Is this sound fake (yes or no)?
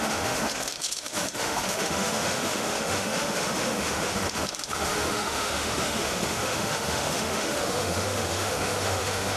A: yes